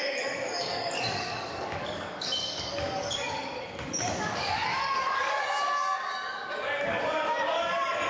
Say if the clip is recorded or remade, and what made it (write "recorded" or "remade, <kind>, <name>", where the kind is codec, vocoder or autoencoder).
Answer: remade, codec, DAC